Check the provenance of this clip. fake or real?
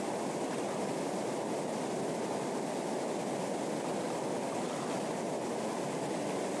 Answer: real